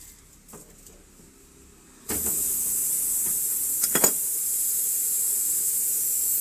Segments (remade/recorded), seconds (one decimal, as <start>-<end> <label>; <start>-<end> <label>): 0.0-6.4 recorded